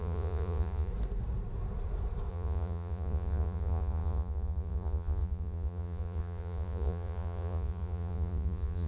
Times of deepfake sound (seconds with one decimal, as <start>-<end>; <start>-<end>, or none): 0.0-0.9; 2.3-8.9